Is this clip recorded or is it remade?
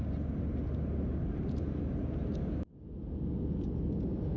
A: recorded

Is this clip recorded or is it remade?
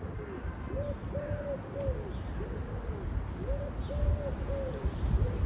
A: recorded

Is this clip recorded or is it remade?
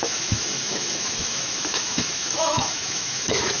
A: remade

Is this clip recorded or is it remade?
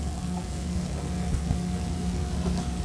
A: remade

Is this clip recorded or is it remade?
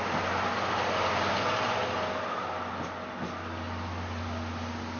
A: recorded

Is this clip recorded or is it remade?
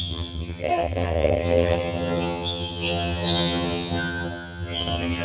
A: remade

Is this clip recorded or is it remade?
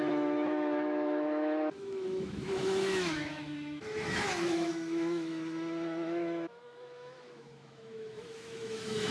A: remade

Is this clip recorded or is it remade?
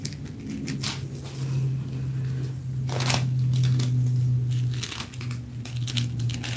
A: recorded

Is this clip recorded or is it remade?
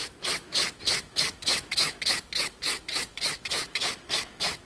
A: remade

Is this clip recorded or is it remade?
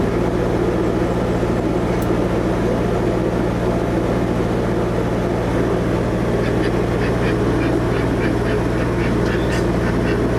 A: recorded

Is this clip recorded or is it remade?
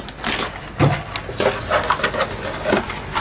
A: recorded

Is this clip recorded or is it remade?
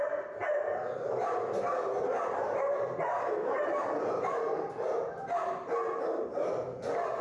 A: recorded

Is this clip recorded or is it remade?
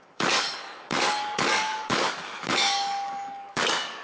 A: remade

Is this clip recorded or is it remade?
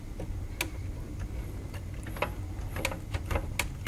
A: recorded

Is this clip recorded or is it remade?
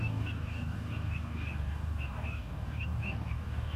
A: remade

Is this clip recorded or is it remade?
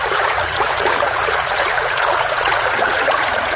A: remade